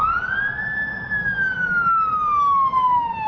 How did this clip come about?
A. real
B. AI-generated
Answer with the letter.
A